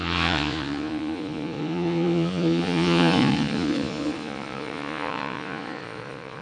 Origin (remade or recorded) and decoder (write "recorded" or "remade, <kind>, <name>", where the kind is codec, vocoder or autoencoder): remade, vocoder, Vocos